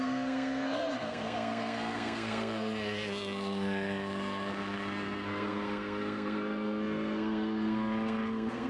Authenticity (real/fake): fake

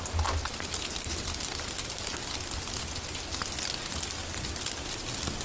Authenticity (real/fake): real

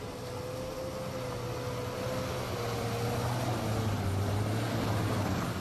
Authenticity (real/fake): real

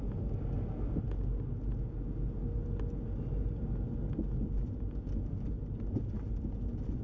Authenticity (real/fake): real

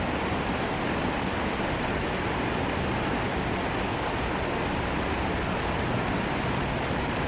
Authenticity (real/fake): real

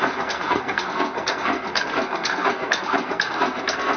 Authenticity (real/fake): fake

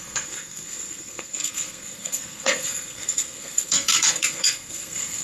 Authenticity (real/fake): fake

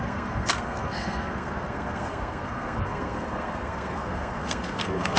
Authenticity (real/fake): fake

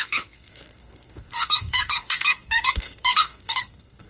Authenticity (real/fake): fake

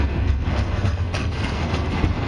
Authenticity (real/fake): fake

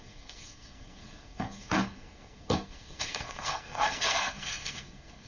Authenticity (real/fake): fake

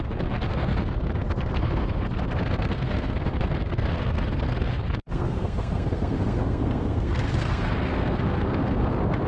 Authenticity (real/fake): fake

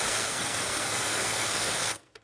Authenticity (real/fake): fake